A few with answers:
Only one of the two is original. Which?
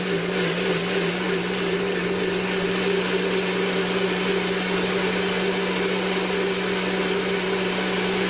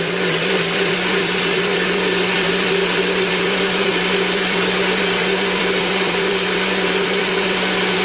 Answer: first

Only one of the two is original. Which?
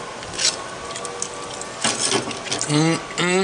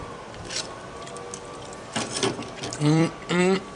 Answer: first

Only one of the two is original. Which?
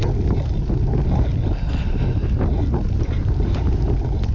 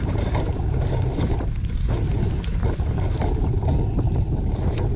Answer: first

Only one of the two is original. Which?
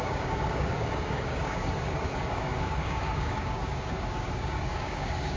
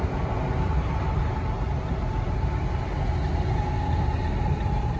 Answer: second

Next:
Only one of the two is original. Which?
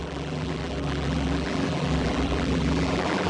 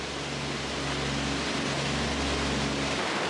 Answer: second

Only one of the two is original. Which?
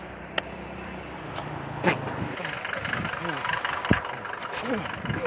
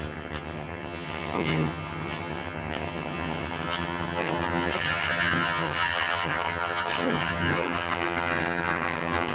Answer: first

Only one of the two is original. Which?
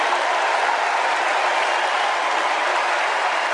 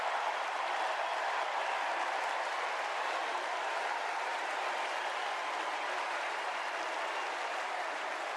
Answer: first